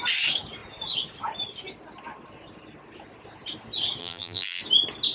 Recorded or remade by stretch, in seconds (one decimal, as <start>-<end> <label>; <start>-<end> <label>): 0.0-4.0 recorded; 4.0-4.6 remade; 4.6-5.1 recorded